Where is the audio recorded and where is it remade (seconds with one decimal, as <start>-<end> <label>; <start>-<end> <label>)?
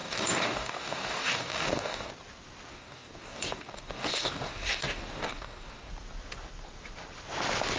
0.0-2.1 remade; 2.1-2.7 recorded; 2.7-5.9 remade; 5.9-7.8 recorded